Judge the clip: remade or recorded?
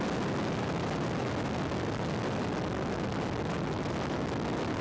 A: recorded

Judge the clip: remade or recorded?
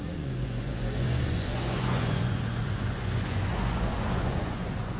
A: remade